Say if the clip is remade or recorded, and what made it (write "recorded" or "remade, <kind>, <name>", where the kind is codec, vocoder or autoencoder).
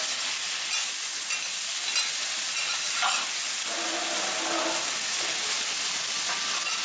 recorded